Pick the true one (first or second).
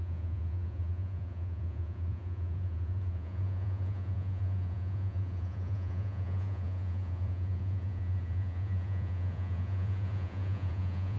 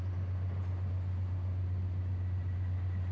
second